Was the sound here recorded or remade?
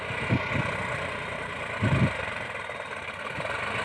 recorded